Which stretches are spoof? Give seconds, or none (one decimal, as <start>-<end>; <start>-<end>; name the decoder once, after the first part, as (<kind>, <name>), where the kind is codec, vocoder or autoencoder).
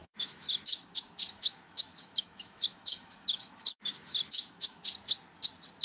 0.0-0.8 (autoencoder, DAC-VAE); 1.3-4.8